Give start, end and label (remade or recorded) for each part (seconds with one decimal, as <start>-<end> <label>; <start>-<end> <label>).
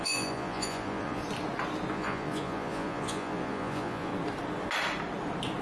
0.0-1.2 remade; 1.2-1.9 recorded; 1.9-4.1 remade; 4.1-5.6 recorded